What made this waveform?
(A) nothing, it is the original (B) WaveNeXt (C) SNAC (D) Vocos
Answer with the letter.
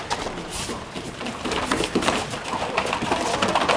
A